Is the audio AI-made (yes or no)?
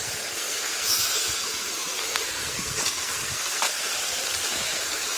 yes